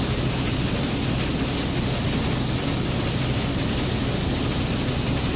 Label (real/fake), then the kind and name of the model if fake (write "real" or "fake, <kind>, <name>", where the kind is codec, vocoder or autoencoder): real